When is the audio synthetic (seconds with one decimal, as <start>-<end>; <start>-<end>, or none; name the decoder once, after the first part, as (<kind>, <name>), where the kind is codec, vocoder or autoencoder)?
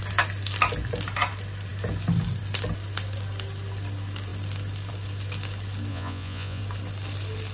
5.9-6.6 (vocoder, Vocos)